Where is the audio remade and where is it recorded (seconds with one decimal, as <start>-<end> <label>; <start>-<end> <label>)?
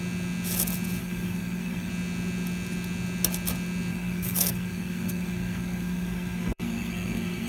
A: 0.0-1.0 recorded; 1.0-1.9 remade; 1.9-3.9 recorded; 3.9-7.5 remade